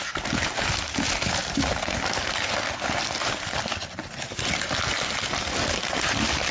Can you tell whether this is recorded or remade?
recorded